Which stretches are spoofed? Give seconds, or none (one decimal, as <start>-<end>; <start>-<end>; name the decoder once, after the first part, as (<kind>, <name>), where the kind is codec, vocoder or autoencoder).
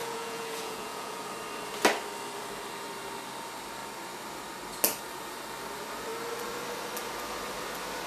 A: 0.0-1.2 (vocoder, Vocos)